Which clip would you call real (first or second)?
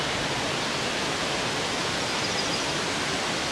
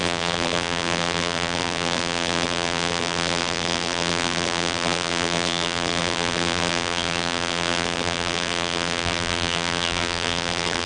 first